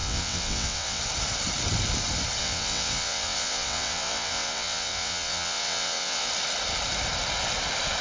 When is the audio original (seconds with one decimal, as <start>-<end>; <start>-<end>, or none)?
1.0-2.4; 6.3-8.0